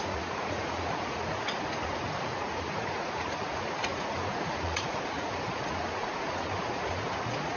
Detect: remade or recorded remade